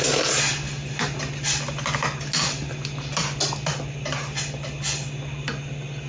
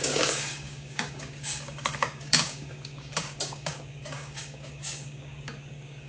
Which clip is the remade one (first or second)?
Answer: second